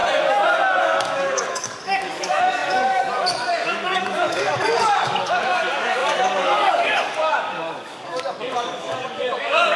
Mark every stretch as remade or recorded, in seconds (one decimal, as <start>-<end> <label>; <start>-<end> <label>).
0.0-0.8 recorded; 0.8-9.8 remade